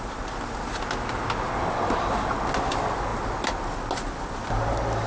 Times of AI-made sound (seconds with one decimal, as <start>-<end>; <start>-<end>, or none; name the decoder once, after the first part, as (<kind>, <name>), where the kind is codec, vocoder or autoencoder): none